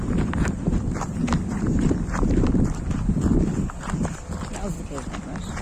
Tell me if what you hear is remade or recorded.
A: remade